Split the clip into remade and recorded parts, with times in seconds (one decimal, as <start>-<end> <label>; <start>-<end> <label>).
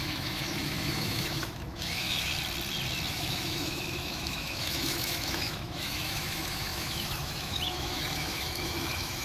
0.0-2.3 remade; 2.3-3.1 recorded; 3.1-9.2 remade